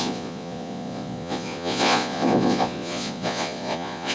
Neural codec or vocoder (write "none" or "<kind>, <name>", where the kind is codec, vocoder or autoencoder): vocoder, Vocos